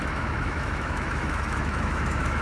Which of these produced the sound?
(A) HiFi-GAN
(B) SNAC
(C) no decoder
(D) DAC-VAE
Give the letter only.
D